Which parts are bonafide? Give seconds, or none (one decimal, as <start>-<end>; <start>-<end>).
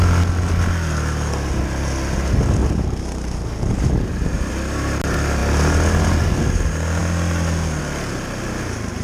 0.0-2.6; 4.5-9.0